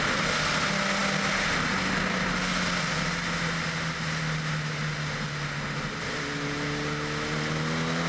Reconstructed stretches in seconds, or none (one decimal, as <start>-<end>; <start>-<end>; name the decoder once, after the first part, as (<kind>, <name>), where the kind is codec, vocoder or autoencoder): none